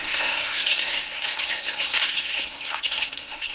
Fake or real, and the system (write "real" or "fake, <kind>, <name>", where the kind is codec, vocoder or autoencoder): fake, codec, SNAC